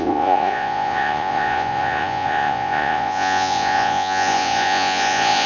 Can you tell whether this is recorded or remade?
remade